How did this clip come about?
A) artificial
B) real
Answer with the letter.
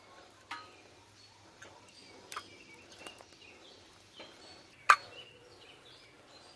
B